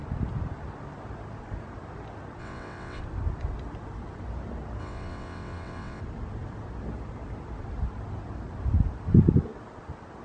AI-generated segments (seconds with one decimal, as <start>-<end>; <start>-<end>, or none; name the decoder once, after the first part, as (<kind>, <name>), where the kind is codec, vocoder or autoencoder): 2.4-3.0 (vocoder, WaveNeXt); 4.8-6.0